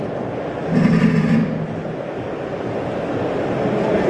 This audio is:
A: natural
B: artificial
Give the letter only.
A